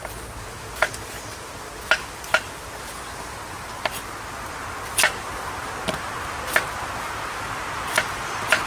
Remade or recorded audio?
recorded